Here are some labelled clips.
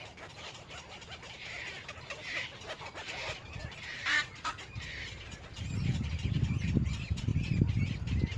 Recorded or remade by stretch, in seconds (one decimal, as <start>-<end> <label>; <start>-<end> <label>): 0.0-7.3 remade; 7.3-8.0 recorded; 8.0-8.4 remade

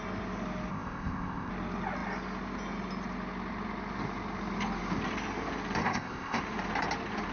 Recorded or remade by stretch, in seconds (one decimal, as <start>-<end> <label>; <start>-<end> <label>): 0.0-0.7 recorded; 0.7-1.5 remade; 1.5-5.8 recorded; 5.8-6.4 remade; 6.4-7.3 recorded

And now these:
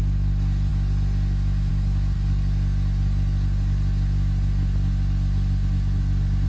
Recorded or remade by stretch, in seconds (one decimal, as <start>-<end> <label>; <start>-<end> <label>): 0.0-6.5 recorded

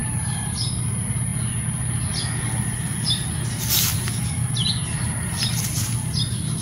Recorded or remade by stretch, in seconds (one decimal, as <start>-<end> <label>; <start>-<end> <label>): 0.0-6.6 recorded